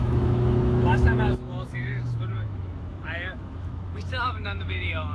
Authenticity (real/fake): fake